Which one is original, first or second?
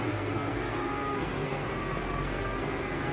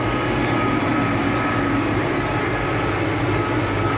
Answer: second